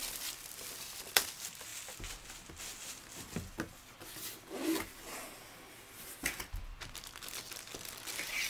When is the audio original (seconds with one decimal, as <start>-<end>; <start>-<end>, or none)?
0.0-1.1; 1.7-6.8